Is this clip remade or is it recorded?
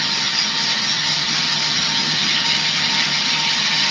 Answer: remade